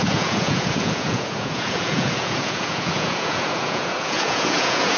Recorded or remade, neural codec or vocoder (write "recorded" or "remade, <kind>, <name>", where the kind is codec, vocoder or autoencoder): remade, vocoder, Vocos